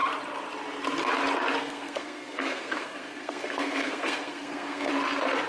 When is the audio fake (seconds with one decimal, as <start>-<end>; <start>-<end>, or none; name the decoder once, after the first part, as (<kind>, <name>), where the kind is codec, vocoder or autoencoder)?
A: 1.6-4.9 (codec, SNAC)